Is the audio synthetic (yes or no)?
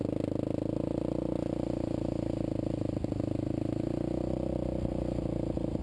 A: no